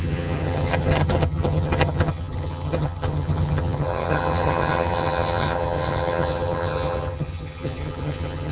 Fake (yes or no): yes